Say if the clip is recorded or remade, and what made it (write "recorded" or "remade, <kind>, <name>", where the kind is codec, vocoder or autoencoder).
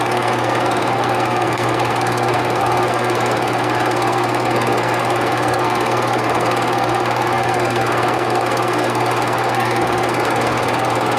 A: remade, codec, SNAC